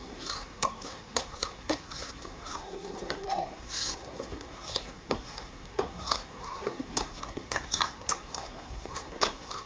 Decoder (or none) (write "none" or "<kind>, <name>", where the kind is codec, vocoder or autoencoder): codec, SNAC